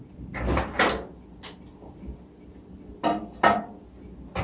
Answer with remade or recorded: recorded